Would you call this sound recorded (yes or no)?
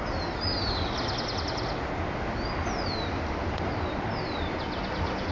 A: yes